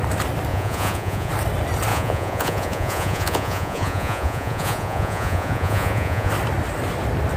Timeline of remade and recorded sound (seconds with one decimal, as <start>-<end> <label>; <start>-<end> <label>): 0.0-0.5 recorded; 0.5-1.3 remade; 1.3-1.9 recorded; 1.9-6.3 remade; 6.3-7.4 recorded